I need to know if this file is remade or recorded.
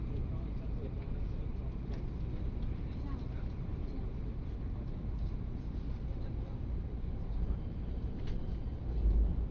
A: recorded